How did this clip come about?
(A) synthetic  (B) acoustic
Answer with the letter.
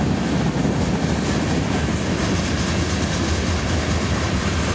B